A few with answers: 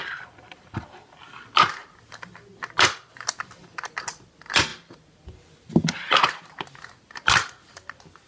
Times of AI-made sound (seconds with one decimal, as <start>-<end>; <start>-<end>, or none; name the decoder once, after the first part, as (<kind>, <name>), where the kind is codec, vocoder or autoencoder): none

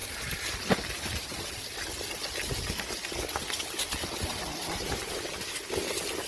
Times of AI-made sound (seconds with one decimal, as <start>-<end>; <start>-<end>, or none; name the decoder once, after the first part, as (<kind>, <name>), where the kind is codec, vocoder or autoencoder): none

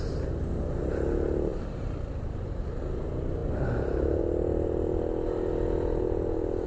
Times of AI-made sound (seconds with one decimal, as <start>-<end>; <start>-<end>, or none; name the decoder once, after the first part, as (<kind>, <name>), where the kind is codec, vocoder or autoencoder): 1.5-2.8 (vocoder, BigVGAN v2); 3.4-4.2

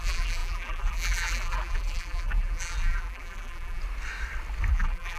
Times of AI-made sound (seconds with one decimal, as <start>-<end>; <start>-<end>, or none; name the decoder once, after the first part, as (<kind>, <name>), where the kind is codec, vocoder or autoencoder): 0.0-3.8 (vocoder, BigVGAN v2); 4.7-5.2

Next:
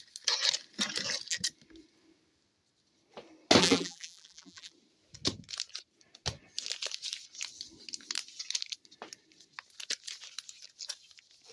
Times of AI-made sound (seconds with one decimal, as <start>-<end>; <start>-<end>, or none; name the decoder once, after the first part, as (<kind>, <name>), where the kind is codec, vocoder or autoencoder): 3.6-4.7 (vocoder, BigVGAN v2)